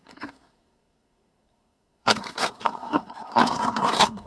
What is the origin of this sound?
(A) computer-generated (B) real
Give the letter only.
A